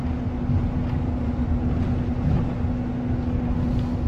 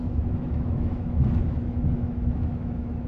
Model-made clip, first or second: second